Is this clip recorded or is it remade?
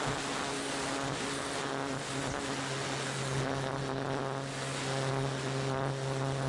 recorded